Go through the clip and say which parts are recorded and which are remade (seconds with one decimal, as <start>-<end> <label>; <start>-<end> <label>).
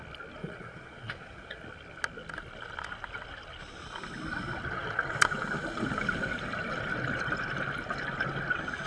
0.0-0.4 recorded; 0.4-1.6 remade; 1.6-8.9 recorded